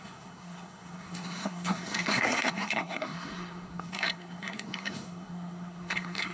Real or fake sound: fake